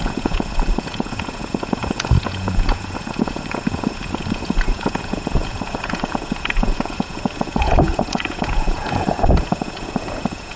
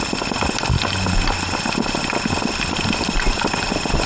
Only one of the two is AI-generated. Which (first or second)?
first